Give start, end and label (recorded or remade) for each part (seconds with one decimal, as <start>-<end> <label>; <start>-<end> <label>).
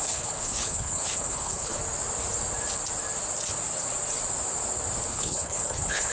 0.0-1.8 remade; 1.8-5.1 recorded; 5.1-6.1 remade